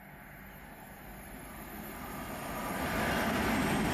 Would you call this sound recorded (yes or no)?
yes